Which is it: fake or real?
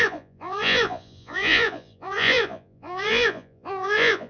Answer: fake